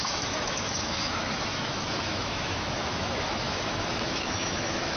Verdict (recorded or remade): remade